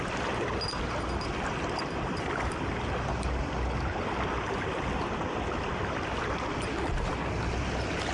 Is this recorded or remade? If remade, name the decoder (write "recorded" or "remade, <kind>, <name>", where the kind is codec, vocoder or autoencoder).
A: recorded